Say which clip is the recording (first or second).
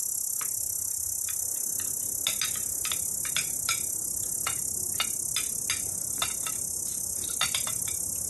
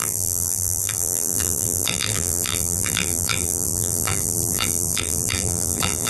first